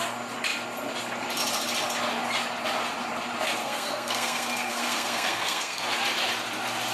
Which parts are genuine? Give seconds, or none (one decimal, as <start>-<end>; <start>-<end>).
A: 0.0-3.6; 5.9-6.9